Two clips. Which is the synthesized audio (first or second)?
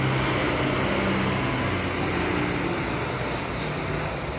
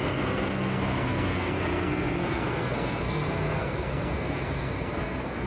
second